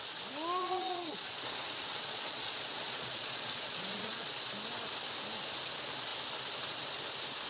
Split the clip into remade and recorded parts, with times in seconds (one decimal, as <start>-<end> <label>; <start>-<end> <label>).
0.0-0.6 recorded; 0.6-1.4 remade; 1.4-1.9 recorded; 1.9-4.3 remade; 4.3-7.5 recorded